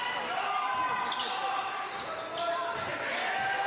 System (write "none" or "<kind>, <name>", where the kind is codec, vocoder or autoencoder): none